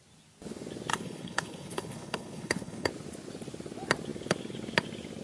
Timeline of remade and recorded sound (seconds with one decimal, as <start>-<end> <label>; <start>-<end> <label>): 0.0-0.9 recorded; 0.9-2.9 remade; 2.9-5.2 recorded